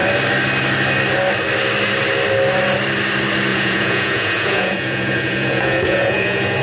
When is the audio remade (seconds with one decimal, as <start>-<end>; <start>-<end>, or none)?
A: 3.5-6.6